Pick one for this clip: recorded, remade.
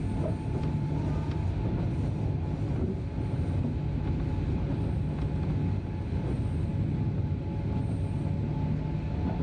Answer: recorded